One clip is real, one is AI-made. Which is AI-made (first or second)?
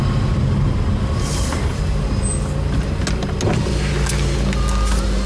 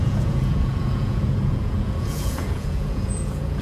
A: second